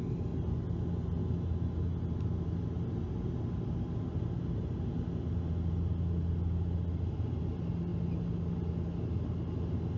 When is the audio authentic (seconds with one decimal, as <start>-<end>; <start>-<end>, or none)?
0.0-10.0